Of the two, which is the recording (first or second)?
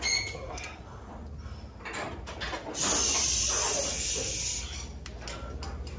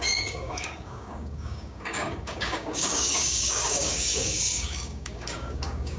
first